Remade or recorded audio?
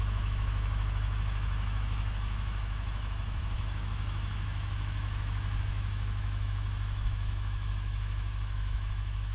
remade